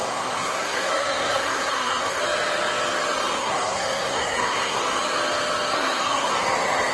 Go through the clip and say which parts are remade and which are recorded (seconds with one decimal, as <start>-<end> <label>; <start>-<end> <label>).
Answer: 0.0-2.2 remade; 2.2-3.4 recorded; 3.4-4.8 remade; 4.8-5.7 recorded; 5.7-6.3 remade; 6.3-6.9 recorded